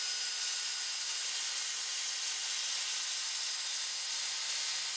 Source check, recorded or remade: recorded